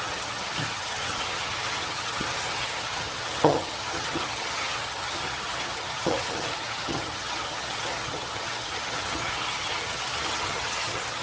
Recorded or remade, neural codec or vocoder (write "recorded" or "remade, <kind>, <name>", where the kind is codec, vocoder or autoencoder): remade, vocoder, HiFi-GAN